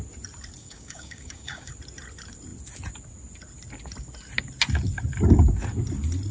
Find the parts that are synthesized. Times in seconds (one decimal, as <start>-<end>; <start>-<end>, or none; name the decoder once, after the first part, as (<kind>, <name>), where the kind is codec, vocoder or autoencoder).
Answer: 0.6-1.7 (codec, DAC)